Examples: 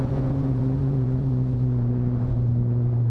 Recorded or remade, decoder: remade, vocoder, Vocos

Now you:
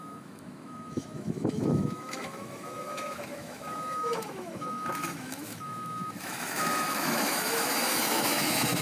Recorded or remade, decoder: remade, autoencoder, DAC-VAE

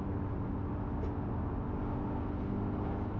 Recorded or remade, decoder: recorded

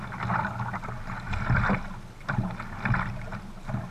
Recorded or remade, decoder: recorded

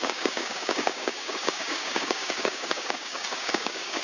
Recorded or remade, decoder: remade, codec, DAC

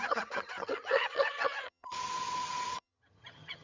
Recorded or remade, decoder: remade, vocoder, HiFi-GAN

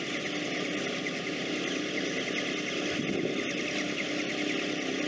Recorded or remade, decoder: recorded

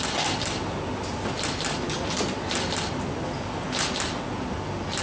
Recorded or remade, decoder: recorded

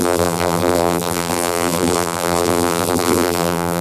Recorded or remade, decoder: remade, vocoder, BigVGAN v2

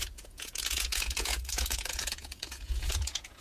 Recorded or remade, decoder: remade, vocoder, Vocos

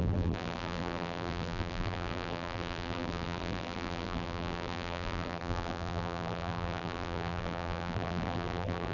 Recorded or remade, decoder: remade, vocoder, BigVGAN v2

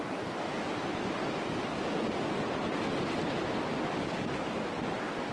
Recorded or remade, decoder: recorded